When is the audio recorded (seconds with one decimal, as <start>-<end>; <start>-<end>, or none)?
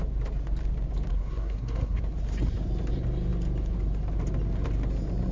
0.0-1.1; 2.0-5.3